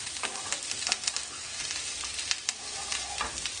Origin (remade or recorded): recorded